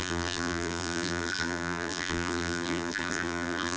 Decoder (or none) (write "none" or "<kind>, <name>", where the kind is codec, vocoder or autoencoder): vocoder, BigVGAN v2